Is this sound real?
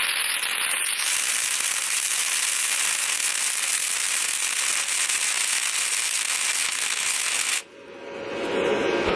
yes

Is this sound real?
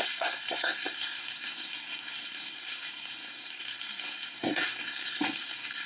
no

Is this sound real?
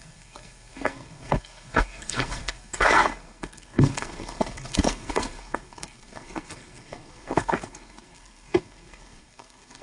no